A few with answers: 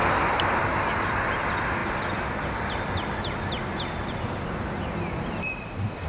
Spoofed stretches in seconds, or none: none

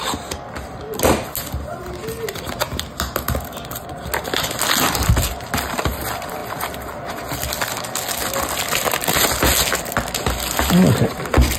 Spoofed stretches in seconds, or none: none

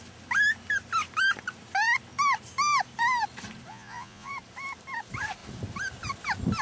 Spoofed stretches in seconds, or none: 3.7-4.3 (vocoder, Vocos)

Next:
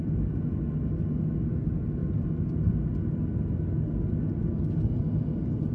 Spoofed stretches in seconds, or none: none

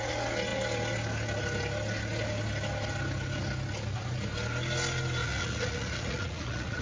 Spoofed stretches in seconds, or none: 5.2-6.8 (vocoder, Vocos)

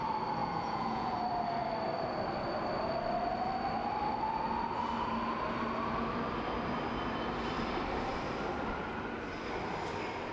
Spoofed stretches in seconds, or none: 0.4-1.2 (vocoder, Vocos)

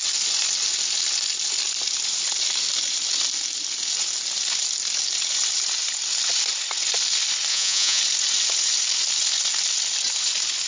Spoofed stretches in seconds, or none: 7.5-8.0 (vocoder, Vocos)

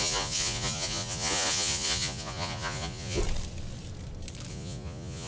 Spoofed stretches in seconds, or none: 0.0-3.2 (vocoder, Vocos); 4.5-5.3